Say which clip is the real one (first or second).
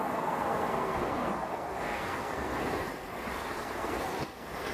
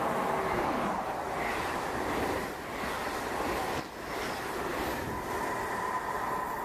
second